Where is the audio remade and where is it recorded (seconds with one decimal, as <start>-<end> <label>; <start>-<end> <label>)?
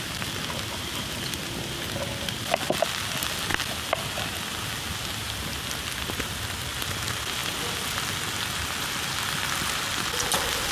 0.0-10.7 recorded